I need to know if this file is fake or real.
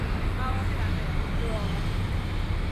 real